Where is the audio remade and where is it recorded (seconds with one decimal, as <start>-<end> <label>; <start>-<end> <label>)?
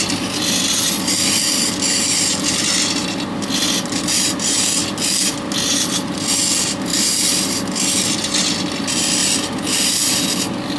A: 0.0-6.9 recorded; 6.9-7.6 remade; 7.6-10.8 recorded